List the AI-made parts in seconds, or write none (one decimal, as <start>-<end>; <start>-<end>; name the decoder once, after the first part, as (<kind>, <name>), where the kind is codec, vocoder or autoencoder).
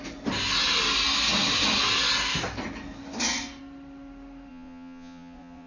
4.5-5.7 (vocoder, Vocos)